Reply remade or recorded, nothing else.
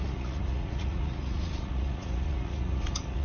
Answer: remade